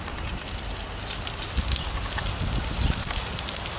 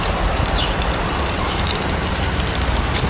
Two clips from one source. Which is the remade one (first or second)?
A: second